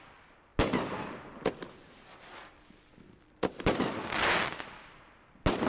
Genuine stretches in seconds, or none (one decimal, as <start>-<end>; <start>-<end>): 0.0-5.7